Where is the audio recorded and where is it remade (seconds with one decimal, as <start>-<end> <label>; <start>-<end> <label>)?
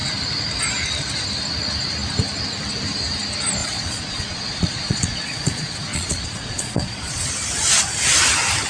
0.0-3.6 recorded; 3.6-7.3 remade; 7.3-8.7 recorded